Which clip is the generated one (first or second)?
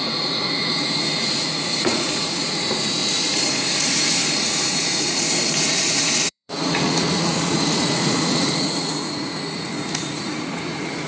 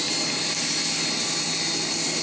first